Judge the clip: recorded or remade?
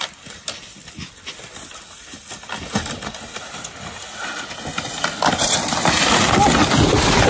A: recorded